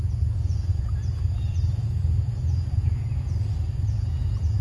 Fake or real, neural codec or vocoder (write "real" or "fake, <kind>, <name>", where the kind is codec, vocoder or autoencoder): fake, vocoder, Vocos